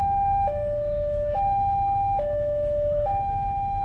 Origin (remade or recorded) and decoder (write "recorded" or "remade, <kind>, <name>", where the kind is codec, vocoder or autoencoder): remade, autoencoder, DAC-VAE